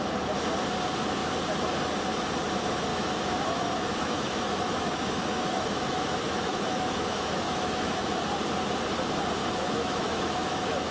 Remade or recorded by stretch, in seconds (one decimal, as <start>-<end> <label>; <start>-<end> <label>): 0.0-2.9 recorded; 2.9-8.1 remade; 8.1-9.4 recorded; 9.4-10.9 remade